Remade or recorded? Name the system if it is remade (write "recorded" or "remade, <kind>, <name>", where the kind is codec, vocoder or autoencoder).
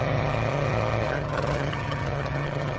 remade, vocoder, HiFi-GAN